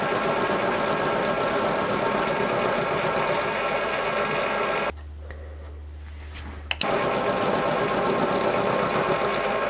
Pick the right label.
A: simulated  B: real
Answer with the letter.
B